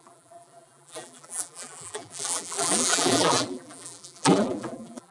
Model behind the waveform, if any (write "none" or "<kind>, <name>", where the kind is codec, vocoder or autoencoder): vocoder, BigVGAN v2